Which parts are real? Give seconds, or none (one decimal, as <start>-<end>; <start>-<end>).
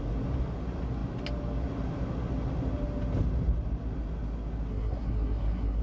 0.0-4.7